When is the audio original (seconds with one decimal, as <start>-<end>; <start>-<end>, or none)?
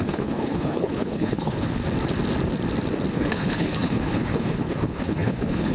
1.8-3.1